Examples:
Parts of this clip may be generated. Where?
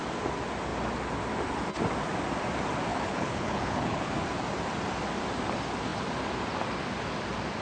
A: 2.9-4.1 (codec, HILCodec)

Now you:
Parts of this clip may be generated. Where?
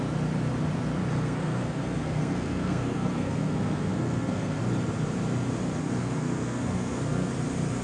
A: 1.1-4.6 (codec, SNAC); 5.8-7.3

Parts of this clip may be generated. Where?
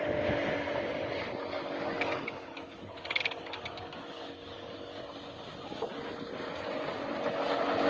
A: 1.5-5.0 (codec, DAC)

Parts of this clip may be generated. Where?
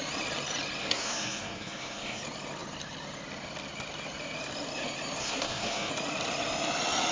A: 0.8-2.2 (codec, SNAC); 5.2-5.9